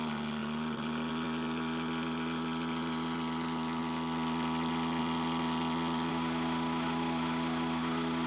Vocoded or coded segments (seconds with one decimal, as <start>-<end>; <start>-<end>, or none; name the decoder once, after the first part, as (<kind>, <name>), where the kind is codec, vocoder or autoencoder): 6.1-8.3 (autoencoder, DAC-VAE)

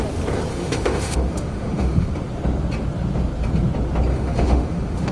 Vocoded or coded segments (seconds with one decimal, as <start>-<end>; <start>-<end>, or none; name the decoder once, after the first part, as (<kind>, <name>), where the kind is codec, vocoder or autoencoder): 0.5-2.1 (autoencoder, DAC-VAE); 4.1-5.1

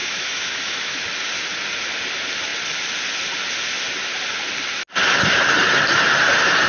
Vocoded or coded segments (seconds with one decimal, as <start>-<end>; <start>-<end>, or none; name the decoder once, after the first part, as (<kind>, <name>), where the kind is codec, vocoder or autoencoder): 0.0-1.0 (autoencoder, DAC-VAE)

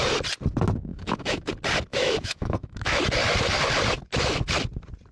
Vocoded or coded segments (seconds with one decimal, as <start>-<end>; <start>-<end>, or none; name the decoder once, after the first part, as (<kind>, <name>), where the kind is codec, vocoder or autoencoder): 0.9-1.5 (autoencoder, DAC-VAE); 1.9-3.0

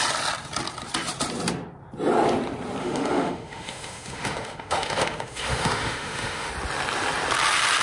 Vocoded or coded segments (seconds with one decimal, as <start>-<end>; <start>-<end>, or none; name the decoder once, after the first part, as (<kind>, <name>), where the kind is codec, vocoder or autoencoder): 2.8-6.5 (autoencoder, DAC-VAE)

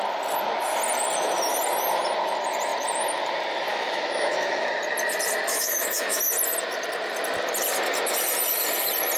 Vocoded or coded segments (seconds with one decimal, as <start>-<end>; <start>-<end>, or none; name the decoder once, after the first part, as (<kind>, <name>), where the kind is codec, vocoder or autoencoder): 3.7-4.8 (autoencoder, DAC-VAE); 5.5-6.2

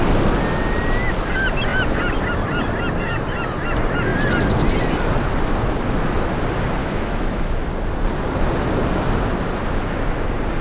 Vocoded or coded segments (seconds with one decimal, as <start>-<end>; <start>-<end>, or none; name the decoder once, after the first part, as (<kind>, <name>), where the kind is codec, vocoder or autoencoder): 6.8-7.5 (autoencoder, DAC-VAE)